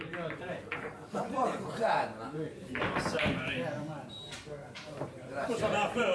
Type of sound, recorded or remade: remade